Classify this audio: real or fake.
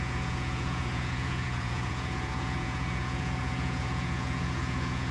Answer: fake